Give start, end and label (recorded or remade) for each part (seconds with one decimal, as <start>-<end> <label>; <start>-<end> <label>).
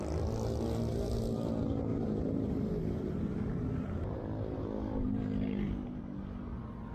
0.0-1.9 recorded; 1.9-6.0 remade; 6.0-6.9 recorded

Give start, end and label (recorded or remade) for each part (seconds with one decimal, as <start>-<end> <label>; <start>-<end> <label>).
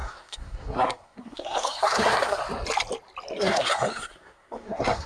0.0-2.4 remade; 2.4-3.4 recorded; 3.4-5.1 remade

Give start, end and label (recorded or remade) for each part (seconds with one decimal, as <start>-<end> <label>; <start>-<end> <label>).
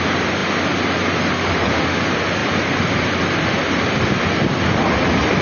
0.0-2.4 recorded; 2.4-3.8 remade; 3.8-5.4 recorded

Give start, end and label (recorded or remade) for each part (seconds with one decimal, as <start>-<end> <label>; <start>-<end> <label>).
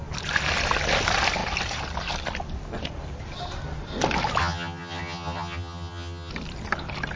0.0-4.4 recorded; 4.4-6.3 remade; 6.3-7.2 recorded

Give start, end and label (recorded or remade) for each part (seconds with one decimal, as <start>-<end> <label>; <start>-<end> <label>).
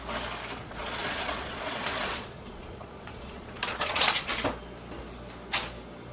0.0-0.6 recorded; 0.6-4.3 remade; 4.3-6.1 recorded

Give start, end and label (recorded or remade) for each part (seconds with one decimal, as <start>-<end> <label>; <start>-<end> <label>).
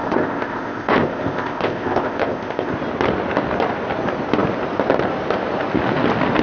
0.0-2.7 remade; 2.7-6.4 recorded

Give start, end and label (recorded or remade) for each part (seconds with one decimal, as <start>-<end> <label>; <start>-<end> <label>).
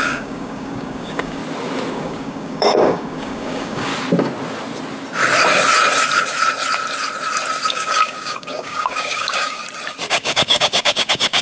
0.0-1.4 remade; 1.4-1.9 recorded; 1.9-3.9 remade; 3.9-7.7 recorded; 7.7-9.6 remade; 9.6-10.1 recorded; 10.1-11.4 remade